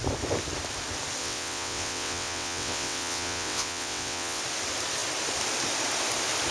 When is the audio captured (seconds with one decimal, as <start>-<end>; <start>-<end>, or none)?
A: 0.0-1.2; 4.4-6.5